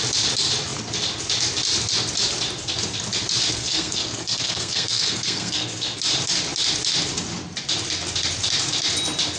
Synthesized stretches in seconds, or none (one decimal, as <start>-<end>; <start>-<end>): 3.5-6.0